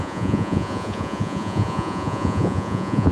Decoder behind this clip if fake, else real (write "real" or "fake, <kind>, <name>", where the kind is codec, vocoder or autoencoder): fake, vocoder, Vocos